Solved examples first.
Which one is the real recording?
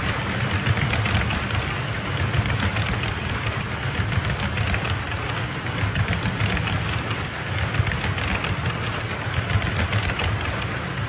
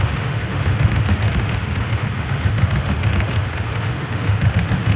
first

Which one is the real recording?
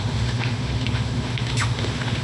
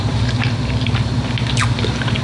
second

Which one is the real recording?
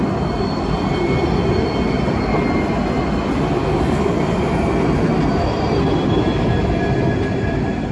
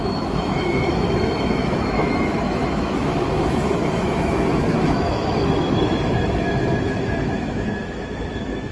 first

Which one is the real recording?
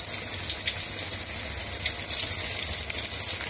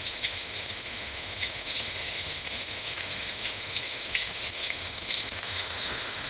first